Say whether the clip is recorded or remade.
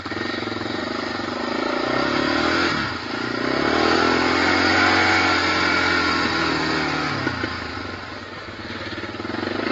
recorded